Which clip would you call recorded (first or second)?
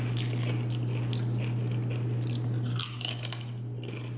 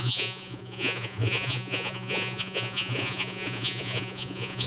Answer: first